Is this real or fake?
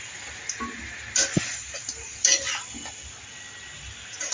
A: real